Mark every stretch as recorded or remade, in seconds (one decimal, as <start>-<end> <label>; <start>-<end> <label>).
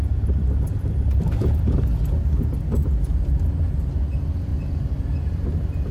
0.0-5.9 recorded